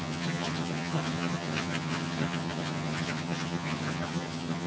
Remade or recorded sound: remade